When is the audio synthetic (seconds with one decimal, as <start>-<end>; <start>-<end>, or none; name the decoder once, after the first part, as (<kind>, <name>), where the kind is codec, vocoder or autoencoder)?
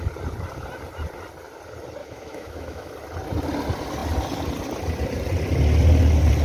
2.0-2.9 (autoencoder, DAC-VAE)